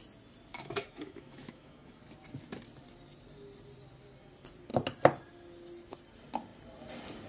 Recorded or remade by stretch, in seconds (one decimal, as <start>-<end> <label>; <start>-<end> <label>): 0.0-0.5 recorded; 0.5-2.0 remade; 2.0-7.3 recorded